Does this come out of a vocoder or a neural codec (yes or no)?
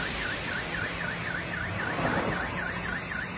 no